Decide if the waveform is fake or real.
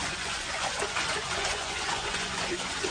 fake